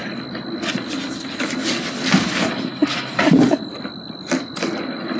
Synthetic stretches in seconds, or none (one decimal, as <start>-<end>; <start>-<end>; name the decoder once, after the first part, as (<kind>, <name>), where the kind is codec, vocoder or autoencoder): none